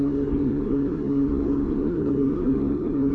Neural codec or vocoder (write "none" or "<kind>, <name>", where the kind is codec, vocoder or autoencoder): codec, SNAC